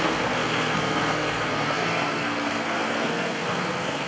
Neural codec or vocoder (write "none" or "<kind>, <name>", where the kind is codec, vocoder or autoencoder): codec, SNAC